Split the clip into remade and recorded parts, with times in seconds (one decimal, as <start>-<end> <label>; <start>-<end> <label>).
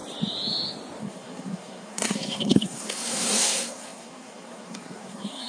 0.0-1.0 recorded; 1.0-5.5 remade